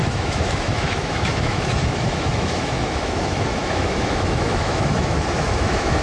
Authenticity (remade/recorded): remade